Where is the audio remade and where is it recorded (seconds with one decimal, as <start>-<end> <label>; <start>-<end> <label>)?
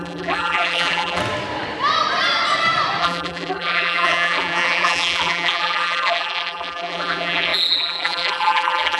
0.0-1.2 remade; 1.2-3.0 recorded; 3.0-9.0 remade